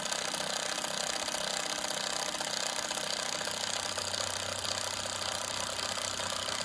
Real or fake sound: real